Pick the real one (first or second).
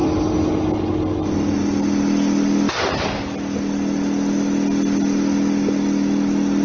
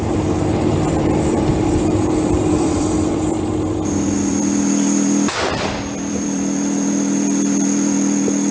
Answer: first